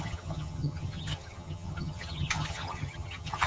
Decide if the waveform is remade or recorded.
remade